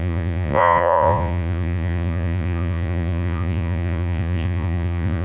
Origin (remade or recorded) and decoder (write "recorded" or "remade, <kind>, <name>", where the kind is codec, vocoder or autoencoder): remade, vocoder, Vocos